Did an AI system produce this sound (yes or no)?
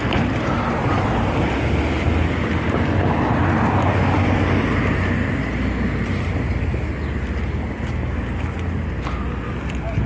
no